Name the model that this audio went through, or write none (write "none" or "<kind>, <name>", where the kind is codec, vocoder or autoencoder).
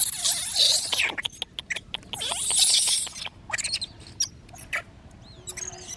none